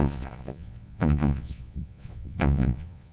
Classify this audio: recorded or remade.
remade